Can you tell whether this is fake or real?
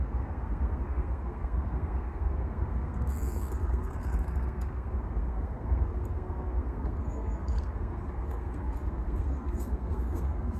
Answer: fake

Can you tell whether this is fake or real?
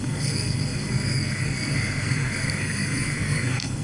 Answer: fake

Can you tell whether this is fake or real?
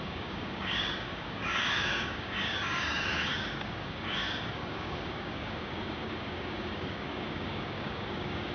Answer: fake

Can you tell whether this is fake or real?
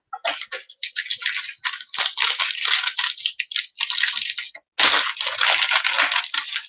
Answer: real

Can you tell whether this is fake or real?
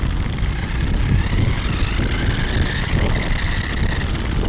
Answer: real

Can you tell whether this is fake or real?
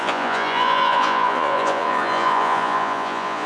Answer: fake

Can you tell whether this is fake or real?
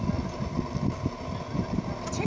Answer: real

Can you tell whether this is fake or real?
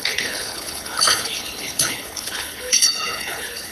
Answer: fake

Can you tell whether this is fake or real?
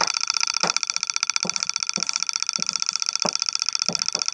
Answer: real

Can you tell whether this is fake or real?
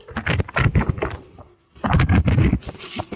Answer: real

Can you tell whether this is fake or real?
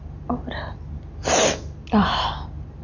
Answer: real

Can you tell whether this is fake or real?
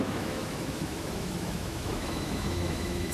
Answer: fake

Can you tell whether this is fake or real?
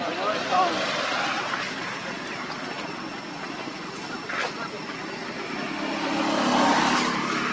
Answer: real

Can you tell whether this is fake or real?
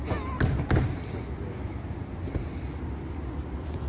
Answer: real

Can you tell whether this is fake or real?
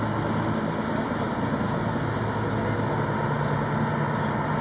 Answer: real